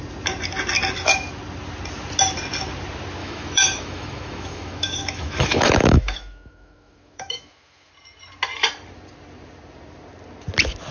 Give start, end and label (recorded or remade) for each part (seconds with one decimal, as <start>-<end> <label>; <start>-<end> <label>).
0.0-3.2 recorded; 3.2-7.9 remade; 7.9-10.9 recorded